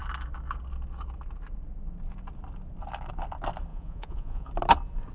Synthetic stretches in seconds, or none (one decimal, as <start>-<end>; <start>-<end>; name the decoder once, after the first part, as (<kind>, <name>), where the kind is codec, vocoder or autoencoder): 3.7-4.5 (vocoder, Vocos)